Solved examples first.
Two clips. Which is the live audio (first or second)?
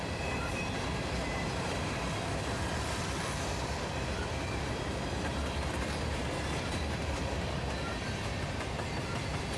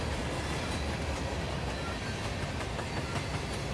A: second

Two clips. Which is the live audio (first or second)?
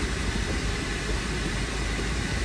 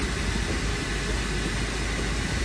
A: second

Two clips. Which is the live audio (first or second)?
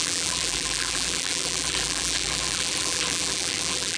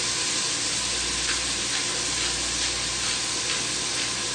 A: second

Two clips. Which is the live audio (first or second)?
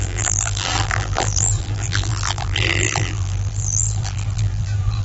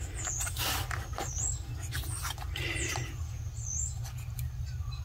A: second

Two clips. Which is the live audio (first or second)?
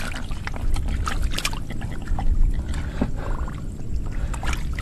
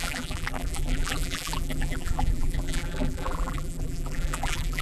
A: first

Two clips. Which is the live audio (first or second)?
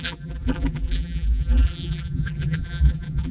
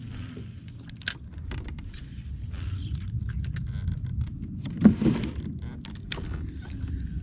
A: second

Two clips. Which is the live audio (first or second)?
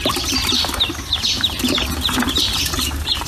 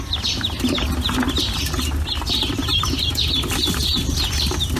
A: second